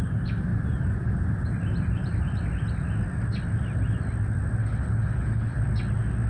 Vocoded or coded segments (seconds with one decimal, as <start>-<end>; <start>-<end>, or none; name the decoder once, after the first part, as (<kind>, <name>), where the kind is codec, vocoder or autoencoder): 4.6-5.6 (codec, HILCodec)